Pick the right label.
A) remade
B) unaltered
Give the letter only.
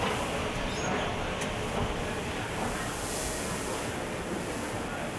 B